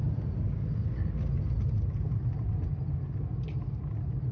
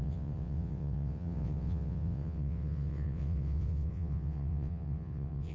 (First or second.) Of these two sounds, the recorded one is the first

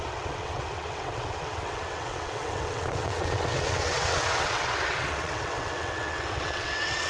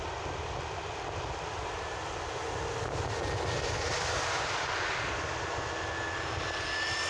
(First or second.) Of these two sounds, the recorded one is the second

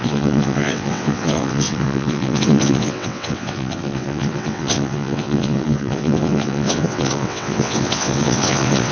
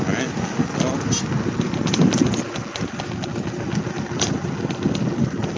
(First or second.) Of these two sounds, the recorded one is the second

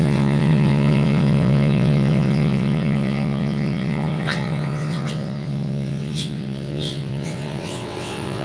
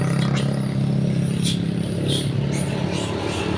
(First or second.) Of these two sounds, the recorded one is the second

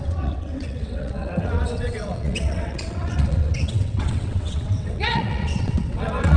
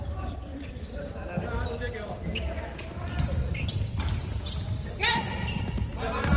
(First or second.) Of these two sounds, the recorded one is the second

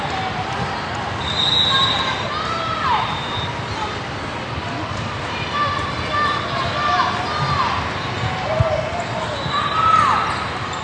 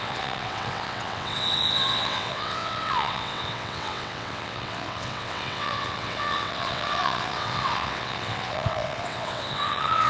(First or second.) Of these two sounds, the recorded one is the first